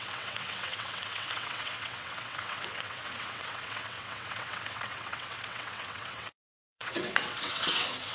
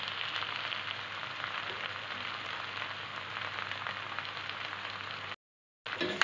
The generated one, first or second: first